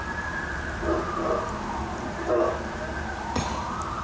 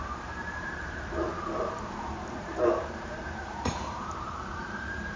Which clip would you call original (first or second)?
first